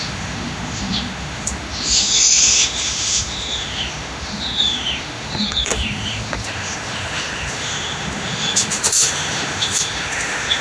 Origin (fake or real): fake